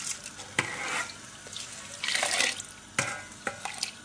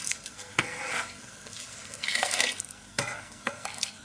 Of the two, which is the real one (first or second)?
first